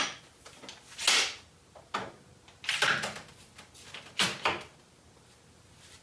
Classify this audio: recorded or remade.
recorded